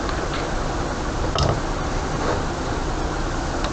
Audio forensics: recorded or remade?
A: recorded